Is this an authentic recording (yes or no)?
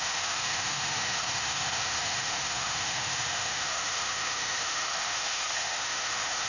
no